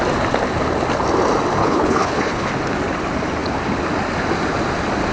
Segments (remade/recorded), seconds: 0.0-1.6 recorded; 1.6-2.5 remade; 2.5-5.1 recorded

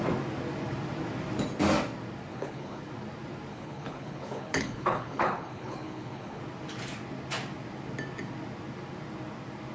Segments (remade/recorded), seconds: 0.0-2.3 recorded; 2.3-2.8 remade; 2.8-3.5 recorded; 3.5-6.4 remade; 6.4-9.7 recorded

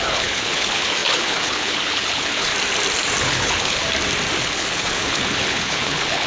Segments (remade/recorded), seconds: 0.0-2.5 remade; 2.5-3.2 recorded; 3.2-3.8 remade; 3.8-4.4 recorded; 4.4-6.3 remade

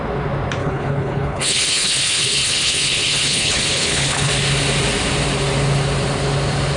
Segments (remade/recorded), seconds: 0.0-0.6 recorded; 0.6-4.3 remade; 4.3-6.8 recorded

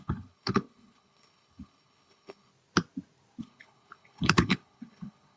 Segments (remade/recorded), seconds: 0.0-2.5 remade; 2.5-3.4 recorded; 3.4-5.4 remade

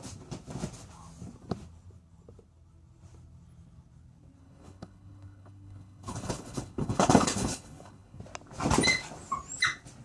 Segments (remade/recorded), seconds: 0.0-4.4 recorded; 4.4-8.2 remade; 8.2-10.0 recorded

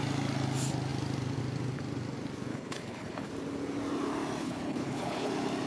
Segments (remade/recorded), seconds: 0.0-2.5 recorded; 2.5-3.3 remade; 3.3-4.4 recorded; 4.4-5.3 remade; 5.3-5.7 recorded

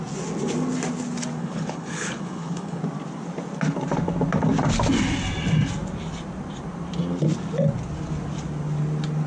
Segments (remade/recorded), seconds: 0.0-1.4 recorded; 1.4-2.8 remade; 2.8-9.3 recorded